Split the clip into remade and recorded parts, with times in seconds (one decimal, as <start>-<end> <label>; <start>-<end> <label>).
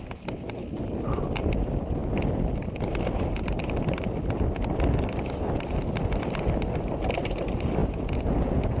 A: 0.0-7.8 recorded; 7.8-8.8 remade